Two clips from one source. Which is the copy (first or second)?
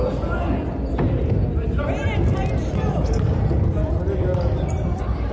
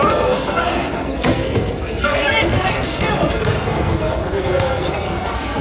second